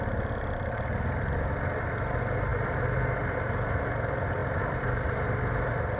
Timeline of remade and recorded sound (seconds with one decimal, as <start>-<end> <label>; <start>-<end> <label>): 0.0-2.5 recorded; 2.5-3.8 remade; 3.8-4.4 recorded; 4.4-5.3 remade; 5.3-6.0 recorded